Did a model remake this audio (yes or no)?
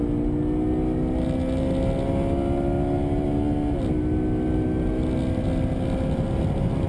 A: no